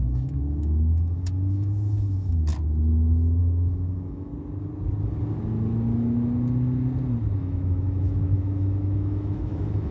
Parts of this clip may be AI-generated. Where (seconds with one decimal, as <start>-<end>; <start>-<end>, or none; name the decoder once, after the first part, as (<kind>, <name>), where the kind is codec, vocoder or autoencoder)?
0.0-2.5 (autoencoder, DAC-VAE); 3.4-4.3; 7.4-9.9

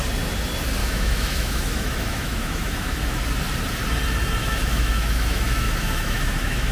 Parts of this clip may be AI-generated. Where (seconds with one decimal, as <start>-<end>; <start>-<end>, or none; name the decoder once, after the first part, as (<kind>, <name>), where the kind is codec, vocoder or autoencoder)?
0.8-3.2 (autoencoder, DAC-VAE); 4.4-6.7

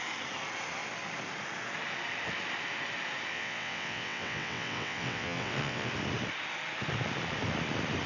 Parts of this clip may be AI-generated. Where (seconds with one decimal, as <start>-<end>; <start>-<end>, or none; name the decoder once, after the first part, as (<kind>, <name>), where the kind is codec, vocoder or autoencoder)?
3.3-5.9 (vocoder, WaveNeXt)